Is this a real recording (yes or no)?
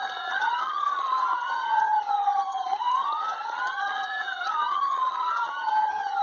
no